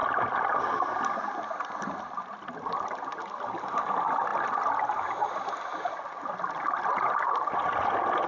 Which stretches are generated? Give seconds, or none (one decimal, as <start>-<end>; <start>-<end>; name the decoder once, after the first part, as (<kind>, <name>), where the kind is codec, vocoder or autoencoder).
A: none